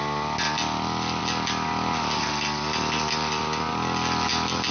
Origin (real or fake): real